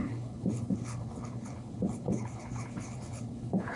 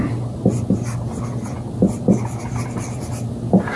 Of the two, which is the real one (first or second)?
second